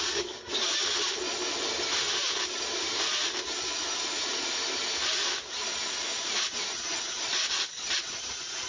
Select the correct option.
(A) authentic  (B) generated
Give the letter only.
A